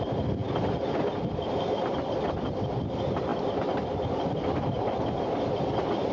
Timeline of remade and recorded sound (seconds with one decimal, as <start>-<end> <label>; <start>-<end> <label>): 0.0-6.1 recorded